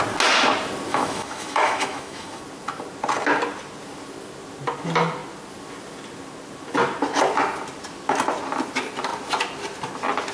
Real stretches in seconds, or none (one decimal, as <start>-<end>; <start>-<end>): 0.0-0.9; 2.4-10.3